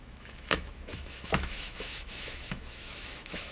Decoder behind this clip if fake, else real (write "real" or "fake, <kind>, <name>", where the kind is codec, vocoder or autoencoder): fake, autoencoder, DAC-VAE